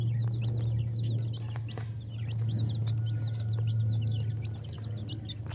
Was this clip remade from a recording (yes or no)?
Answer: no